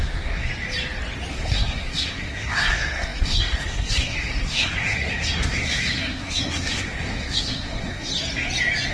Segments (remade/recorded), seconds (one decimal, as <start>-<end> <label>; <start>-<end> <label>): 0.0-0.5 remade; 0.5-1.3 recorded; 1.3-8.1 remade; 8.1-8.9 recorded